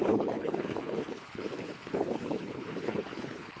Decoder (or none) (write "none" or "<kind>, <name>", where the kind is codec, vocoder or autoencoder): codec, HILCodec